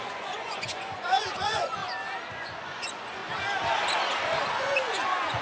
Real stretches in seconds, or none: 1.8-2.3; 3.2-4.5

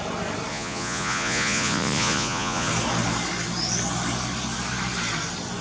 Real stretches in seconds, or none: 0.0-0.5; 2.7-5.6

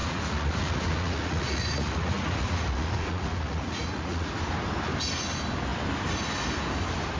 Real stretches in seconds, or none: 4.3-7.2

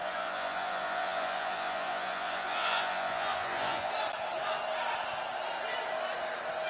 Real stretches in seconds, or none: 3.9-6.7